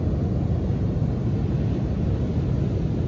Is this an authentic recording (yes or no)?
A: yes